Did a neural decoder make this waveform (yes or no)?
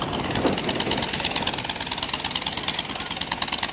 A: no